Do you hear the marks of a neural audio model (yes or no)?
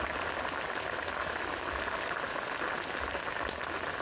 no